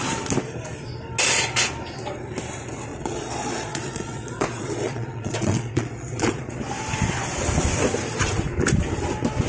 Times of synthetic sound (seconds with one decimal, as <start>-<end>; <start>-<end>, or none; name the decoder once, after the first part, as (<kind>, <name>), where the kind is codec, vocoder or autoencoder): 2.9-6.5 (vocoder, Vocos)